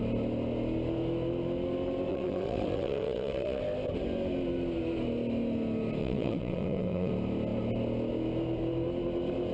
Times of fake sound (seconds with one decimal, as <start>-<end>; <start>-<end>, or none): 2.1-3.6; 6.0-7.1